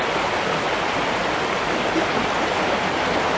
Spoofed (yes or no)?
no